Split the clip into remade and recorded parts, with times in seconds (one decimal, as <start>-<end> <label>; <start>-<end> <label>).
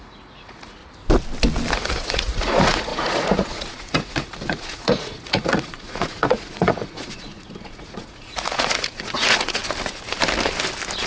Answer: 0.0-0.8 remade; 0.8-1.7 recorded; 1.7-9.6 remade; 9.6-11.1 recorded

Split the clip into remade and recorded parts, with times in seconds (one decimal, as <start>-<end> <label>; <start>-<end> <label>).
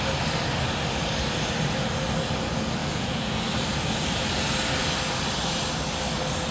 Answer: 0.0-2.8 recorded; 2.8-3.4 remade; 3.4-6.5 recorded